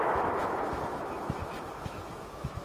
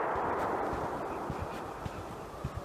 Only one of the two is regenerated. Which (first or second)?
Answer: first